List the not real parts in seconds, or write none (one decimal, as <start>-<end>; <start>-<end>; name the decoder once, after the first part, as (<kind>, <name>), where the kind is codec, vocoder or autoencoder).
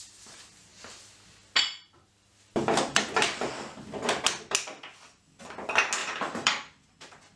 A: 6.0-6.5 (vocoder, BigVGAN v2)